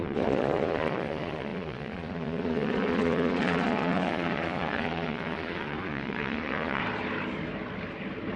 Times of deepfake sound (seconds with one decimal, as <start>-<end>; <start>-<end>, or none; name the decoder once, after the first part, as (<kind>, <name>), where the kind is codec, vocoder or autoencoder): 0.0-6.8 (vocoder, Vocos)